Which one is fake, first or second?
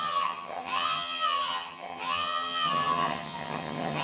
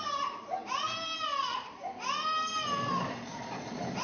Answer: first